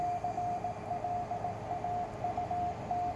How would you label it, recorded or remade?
remade